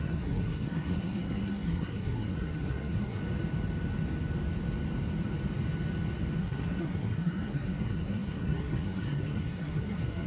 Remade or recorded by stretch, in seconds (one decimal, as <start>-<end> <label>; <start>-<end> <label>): 0.0-3.2 remade; 3.2-6.4 recorded; 6.4-10.3 remade